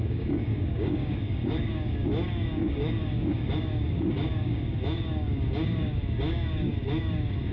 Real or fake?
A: fake